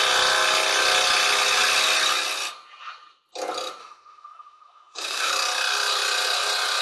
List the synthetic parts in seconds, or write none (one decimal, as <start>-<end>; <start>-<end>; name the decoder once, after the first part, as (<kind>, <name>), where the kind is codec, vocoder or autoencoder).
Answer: 3.8-5.3 (autoencoder, DAC-VAE)

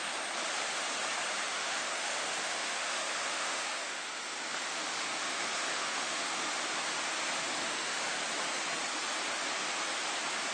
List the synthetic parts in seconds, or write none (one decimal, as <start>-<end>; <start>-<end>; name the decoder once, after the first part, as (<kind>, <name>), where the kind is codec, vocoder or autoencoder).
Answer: 1.5-6.5 (autoencoder, DAC-VAE); 7.6-8.2